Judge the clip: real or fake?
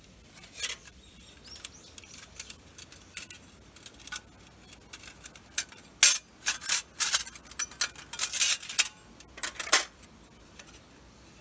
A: real